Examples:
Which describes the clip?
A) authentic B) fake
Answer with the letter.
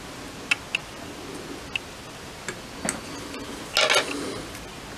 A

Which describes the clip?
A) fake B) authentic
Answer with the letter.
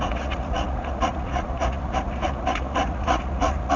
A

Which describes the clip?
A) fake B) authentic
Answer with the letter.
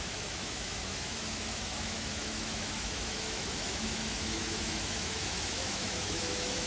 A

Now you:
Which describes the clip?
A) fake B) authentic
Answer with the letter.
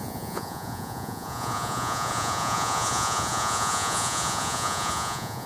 A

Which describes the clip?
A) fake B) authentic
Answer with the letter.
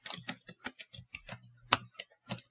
B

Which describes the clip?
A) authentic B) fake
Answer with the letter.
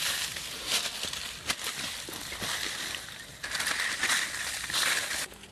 A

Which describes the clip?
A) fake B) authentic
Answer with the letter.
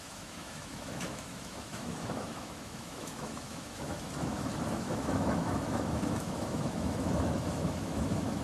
A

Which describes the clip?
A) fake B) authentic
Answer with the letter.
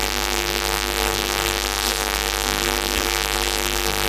A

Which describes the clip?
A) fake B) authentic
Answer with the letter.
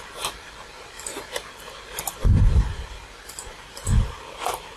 B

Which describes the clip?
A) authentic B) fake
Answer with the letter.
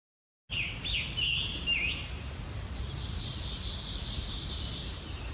A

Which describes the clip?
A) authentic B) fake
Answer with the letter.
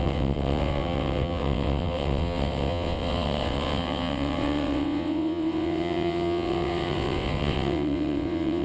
B